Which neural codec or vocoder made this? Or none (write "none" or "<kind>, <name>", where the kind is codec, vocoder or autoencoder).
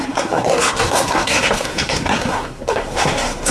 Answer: codec, SNAC